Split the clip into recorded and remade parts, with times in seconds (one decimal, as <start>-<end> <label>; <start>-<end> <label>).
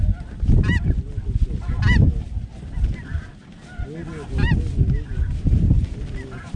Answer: 0.0-6.6 recorded